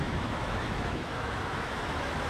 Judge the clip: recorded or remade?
remade